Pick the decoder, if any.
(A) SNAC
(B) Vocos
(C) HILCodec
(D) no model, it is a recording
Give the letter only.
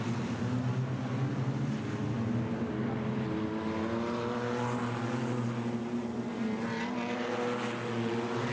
D